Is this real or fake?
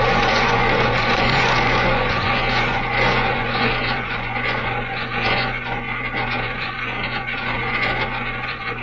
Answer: fake